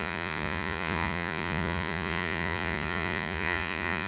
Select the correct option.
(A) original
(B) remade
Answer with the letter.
B